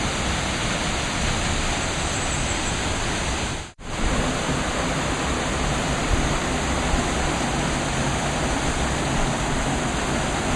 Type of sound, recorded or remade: recorded